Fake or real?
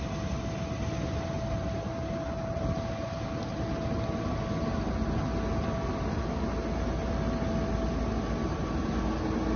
real